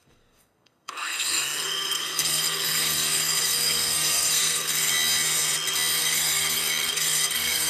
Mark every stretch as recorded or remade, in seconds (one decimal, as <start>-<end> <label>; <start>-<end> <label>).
0.0-4.9 remade; 4.9-6.0 recorded; 6.0-7.7 remade